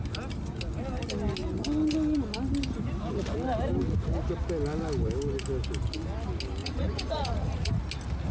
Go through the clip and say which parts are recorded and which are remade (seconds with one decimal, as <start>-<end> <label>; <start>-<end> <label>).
0.0-6.6 recorded; 6.6-7.7 remade; 7.7-8.3 recorded